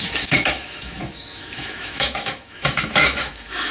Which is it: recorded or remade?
remade